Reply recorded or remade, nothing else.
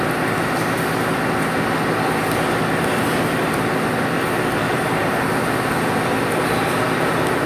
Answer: recorded